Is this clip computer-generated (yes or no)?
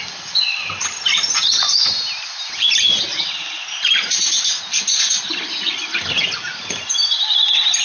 no